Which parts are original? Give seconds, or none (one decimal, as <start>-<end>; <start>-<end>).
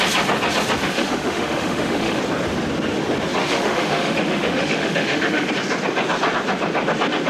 0.0-0.8; 2.2-3.4; 5.5-7.3